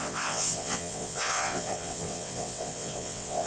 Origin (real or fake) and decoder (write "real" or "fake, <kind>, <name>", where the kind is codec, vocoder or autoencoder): fake, vocoder, WaveNeXt